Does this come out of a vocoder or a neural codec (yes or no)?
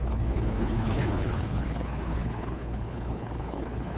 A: yes